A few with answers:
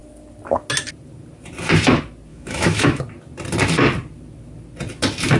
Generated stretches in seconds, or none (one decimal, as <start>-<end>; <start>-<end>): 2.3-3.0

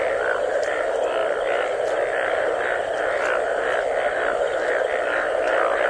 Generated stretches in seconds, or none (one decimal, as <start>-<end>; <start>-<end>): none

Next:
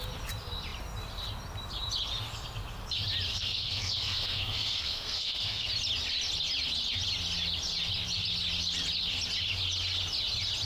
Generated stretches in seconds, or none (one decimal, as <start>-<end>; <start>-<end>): 3.3-5.7

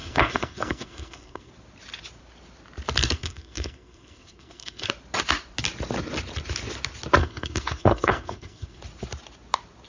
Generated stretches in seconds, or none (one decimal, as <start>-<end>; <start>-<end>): 0.0-1.5; 3.0-4.9; 7.2-8.8